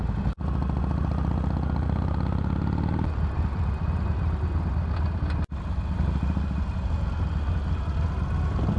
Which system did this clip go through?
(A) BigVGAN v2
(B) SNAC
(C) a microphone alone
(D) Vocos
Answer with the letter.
C